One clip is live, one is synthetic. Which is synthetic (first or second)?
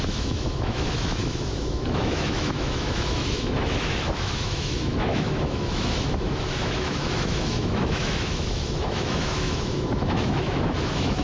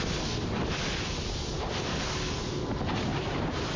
first